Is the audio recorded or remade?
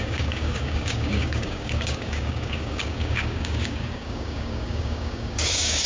remade